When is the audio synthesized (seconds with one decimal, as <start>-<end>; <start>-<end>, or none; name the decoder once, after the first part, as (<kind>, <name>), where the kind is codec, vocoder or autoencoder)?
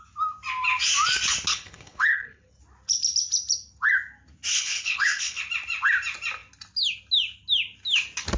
1.5-2.6 (codec, HILCodec); 4.5-5.4